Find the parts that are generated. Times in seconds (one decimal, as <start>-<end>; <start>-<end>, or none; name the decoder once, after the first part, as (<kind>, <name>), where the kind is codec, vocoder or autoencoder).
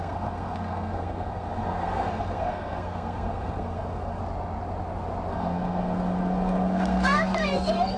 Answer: 0.0-4.2 (codec, SNAC); 5.3-8.0